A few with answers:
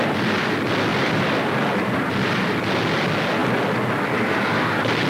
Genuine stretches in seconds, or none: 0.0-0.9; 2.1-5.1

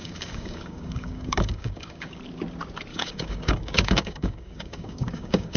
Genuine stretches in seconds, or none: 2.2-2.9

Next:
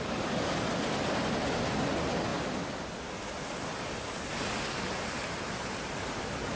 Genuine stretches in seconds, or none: 0.0-6.6